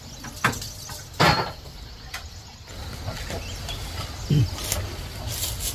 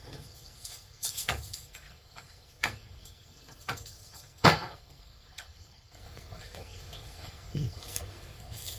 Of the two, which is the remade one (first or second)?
second